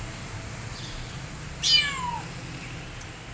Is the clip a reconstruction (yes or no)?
no